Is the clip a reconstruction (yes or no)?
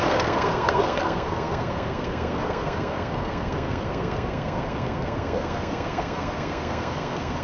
yes